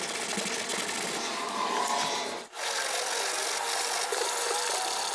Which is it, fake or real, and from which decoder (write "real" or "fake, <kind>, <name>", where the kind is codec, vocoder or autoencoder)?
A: real